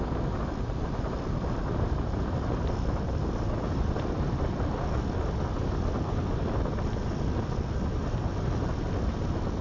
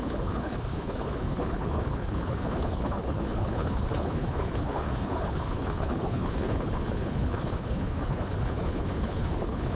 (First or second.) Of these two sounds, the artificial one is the second